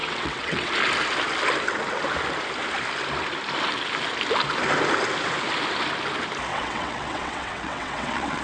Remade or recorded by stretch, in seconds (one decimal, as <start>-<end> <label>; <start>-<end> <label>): 0.0-0.7 remade; 0.7-6.5 recorded; 6.5-8.4 remade